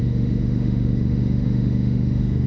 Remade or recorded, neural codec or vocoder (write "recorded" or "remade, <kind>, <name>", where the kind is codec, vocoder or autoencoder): remade, autoencoder, DAC-VAE